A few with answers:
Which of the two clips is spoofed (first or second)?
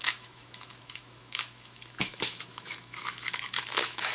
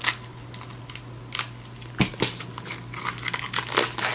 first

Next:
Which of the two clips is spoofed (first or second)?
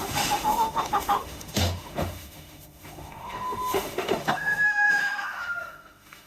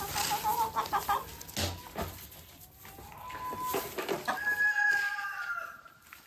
first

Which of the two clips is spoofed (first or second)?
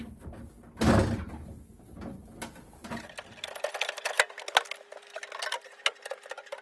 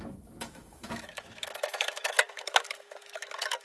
second